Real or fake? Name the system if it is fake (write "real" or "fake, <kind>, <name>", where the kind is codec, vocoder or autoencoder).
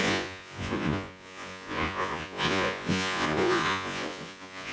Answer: fake, vocoder, Vocos